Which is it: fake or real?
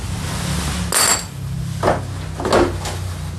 real